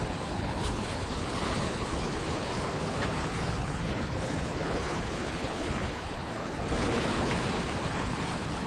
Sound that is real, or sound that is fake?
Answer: fake